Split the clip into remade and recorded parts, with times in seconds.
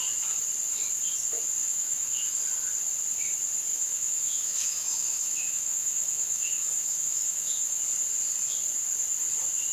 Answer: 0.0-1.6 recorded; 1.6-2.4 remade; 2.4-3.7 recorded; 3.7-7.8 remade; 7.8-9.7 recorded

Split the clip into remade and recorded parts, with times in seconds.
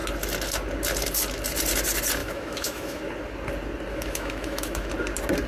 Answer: 0.0-2.2 recorded; 2.2-3.0 remade; 3.0-3.9 recorded; 3.9-4.9 remade; 4.9-5.5 recorded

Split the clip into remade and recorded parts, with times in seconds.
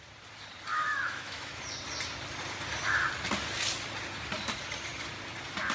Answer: 0.0-0.7 recorded; 0.7-1.6 remade; 1.6-5.7 recorded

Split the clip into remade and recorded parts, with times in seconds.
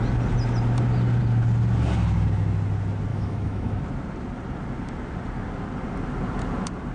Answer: 0.0-3.1 recorded; 3.1-3.8 remade; 3.8-6.9 recorded